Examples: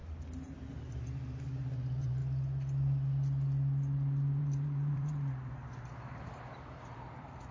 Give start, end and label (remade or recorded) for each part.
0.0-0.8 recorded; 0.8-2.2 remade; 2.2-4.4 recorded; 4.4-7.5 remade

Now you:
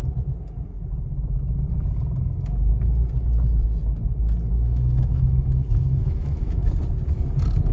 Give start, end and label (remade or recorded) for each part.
0.0-4.5 recorded; 4.5-6.6 remade; 6.6-7.7 recorded

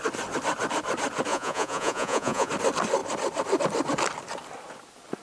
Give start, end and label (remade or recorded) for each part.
0.0-1.3 recorded; 1.3-2.5 remade; 2.5-5.2 recorded

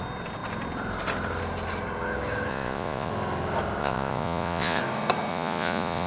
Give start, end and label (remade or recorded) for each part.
0.0-2.5 recorded; 2.5-3.1 remade; 3.1-3.8 recorded; 3.8-4.8 remade; 4.8-5.3 recorded; 5.3-6.1 remade